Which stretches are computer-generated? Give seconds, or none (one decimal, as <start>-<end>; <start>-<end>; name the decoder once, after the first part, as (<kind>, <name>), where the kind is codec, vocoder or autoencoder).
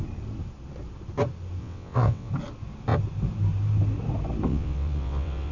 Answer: 1.6-2.3 (vocoder, WaveNeXt); 4.5-5.5